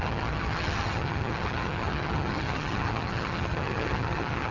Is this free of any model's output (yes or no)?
no